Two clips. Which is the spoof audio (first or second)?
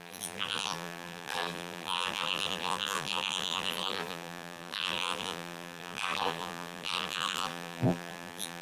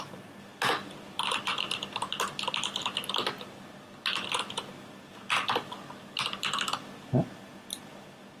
first